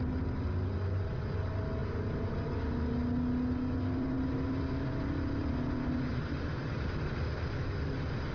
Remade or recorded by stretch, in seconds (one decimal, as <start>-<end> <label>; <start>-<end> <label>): 0.0-1.8 recorded; 1.8-2.3 remade; 2.3-6.1 recorded; 6.1-7.0 remade; 7.0-8.3 recorded